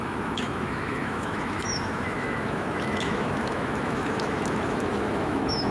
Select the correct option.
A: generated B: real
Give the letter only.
A